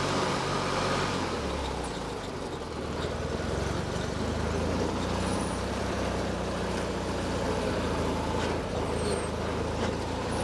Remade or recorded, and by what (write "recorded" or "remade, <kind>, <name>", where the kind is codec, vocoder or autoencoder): remade, vocoder, BigVGAN v2